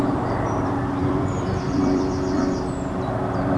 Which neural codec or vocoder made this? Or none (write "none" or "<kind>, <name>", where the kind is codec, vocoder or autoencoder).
vocoder, BigVGAN v2